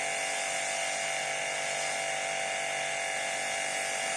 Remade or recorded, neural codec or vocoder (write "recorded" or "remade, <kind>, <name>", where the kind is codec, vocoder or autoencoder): recorded